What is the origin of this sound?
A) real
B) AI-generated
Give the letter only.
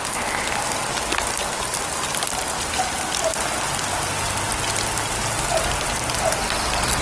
A